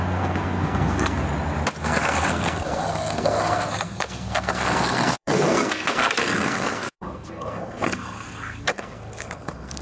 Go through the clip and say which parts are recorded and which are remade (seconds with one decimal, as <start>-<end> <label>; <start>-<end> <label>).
0.0-1.2 remade; 1.2-1.8 recorded; 1.8-9.8 remade